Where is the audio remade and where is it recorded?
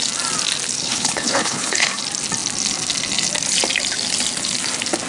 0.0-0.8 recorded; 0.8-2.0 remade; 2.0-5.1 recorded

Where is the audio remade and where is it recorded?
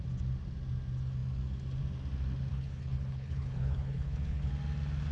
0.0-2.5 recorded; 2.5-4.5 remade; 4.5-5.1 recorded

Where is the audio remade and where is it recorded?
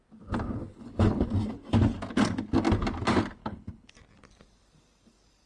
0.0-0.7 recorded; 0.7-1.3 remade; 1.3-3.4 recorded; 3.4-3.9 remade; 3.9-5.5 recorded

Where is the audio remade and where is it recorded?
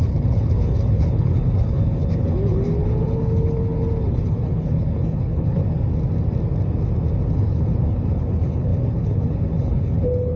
0.0-5.6 remade; 5.6-7.3 recorded; 7.3-10.4 remade